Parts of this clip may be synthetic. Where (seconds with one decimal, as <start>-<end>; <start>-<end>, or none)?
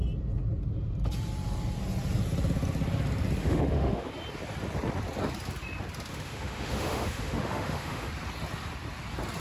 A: 3.4-4.1; 6.1-8.1